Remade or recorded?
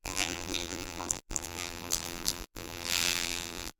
remade